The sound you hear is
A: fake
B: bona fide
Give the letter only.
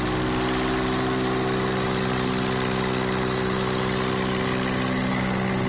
B